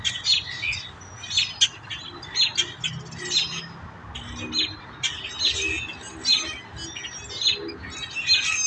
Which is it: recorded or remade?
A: recorded